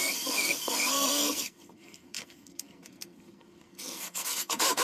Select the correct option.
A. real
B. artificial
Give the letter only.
B